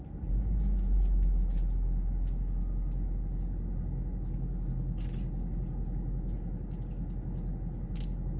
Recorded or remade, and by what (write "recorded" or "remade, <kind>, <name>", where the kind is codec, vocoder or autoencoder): recorded